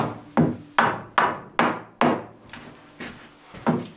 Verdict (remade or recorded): recorded